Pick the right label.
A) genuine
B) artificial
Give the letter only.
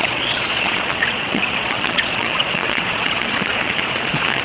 B